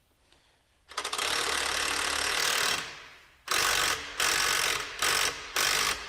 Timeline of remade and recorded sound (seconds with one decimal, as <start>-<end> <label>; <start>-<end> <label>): 0.0-6.1 recorded